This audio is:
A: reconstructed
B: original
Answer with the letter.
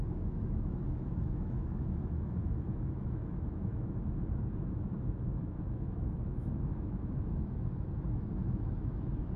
A